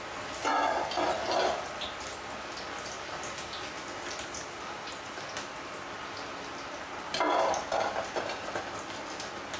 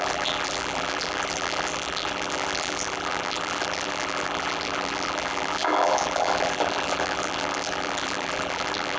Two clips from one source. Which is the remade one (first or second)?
second